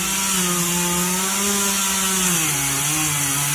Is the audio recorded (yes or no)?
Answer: yes